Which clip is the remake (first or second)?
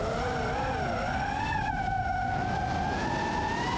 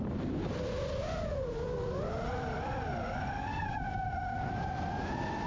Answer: second